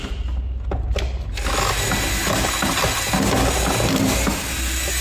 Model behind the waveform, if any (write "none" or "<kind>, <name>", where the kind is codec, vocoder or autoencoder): none